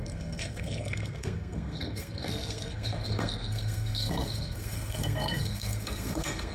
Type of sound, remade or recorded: remade